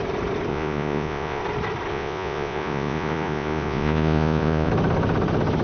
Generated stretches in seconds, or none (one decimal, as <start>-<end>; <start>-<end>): 0.5-1.4; 1.9-4.7